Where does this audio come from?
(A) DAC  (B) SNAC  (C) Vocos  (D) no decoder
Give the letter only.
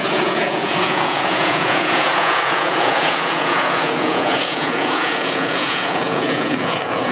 C